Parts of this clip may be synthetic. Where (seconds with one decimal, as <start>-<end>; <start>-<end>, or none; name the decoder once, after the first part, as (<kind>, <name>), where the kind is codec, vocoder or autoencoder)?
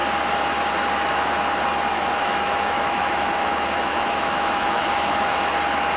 1.9-5.5 (autoencoder, DAC-VAE)